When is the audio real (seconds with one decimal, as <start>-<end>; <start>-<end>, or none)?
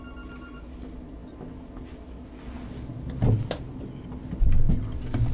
0.0-5.3